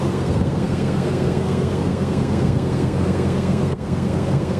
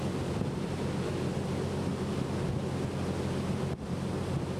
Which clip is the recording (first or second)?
second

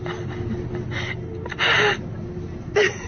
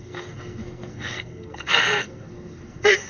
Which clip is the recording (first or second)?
first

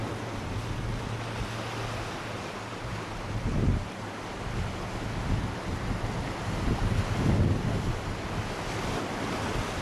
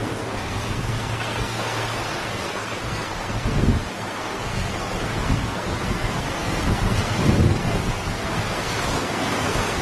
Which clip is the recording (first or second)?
first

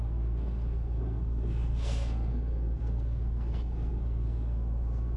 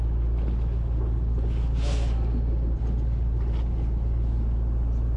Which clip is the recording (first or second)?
second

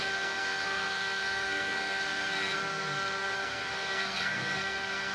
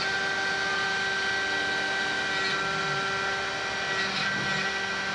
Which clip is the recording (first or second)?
second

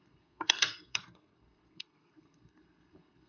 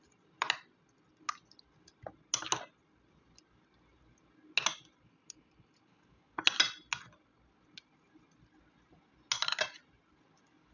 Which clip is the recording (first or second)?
second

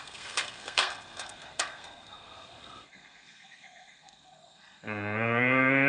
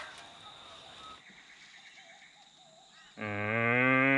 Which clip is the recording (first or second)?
second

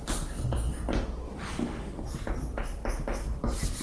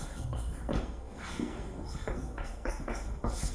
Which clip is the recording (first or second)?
first